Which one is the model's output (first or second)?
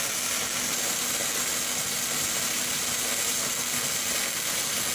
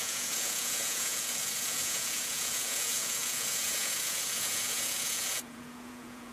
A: second